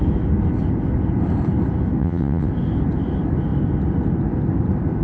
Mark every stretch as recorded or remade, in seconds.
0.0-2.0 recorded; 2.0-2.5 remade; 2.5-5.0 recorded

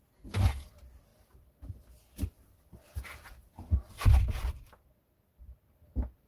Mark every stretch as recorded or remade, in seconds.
0.0-6.3 recorded

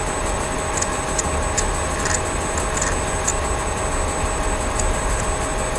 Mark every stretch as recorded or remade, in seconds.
0.0-5.8 recorded

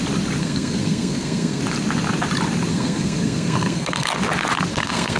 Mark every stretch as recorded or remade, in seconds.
0.0-0.4 recorded; 0.4-1.6 remade; 1.6-2.7 recorded; 2.7-4.2 remade; 4.2-4.7 recorded; 4.7-5.2 remade

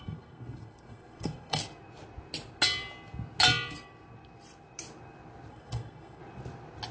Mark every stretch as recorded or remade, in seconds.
0.0-1.6 remade; 1.6-5.5 recorded; 5.5-6.2 remade; 6.2-6.9 recorded

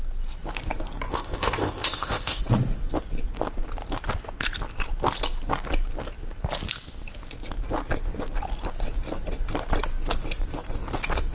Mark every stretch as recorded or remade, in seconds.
0.0-1.1 recorded; 1.1-2.4 remade; 2.4-11.3 recorded